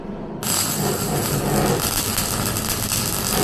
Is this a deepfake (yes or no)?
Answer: no